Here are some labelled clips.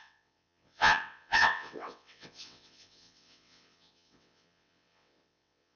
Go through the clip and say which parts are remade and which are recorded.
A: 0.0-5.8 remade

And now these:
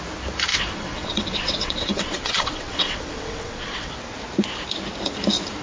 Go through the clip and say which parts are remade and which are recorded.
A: 0.0-0.5 recorded; 0.5-3.9 remade; 3.9-5.6 recorded